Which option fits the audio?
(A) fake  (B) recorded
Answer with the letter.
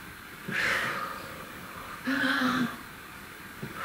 A